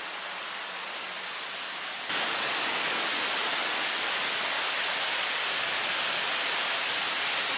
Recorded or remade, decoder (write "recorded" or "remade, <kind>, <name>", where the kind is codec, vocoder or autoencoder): recorded